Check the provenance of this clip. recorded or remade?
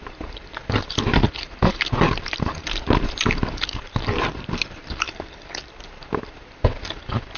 remade